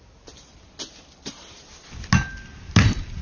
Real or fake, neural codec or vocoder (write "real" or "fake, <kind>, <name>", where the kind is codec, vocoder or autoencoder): real